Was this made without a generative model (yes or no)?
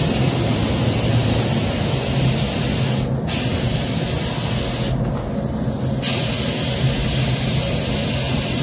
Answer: yes